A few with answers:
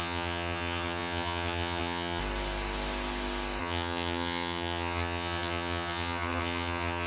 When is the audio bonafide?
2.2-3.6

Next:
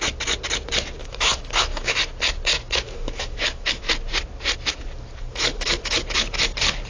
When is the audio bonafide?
0.0-1.0; 2.0-2.5; 3.9-5.3; 6.4-6.9

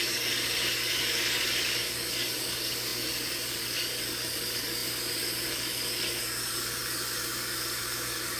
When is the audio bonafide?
none

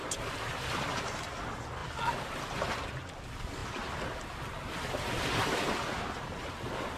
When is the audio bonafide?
0.7-7.0

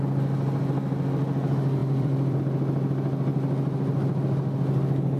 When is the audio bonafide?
0.0-1.8; 2.4-5.2

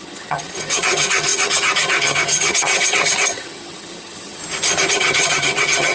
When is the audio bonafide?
4.4-4.9

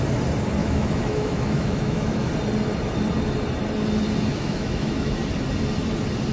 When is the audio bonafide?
0.0-0.6; 2.3-4.3; 5.2-6.3